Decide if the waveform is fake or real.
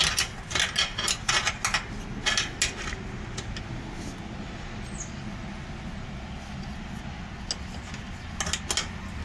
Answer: real